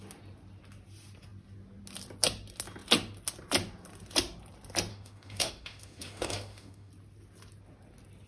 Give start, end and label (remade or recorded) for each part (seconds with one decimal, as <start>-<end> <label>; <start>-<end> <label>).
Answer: 0.0-4.9 recorded; 4.9-6.9 remade; 6.9-8.3 recorded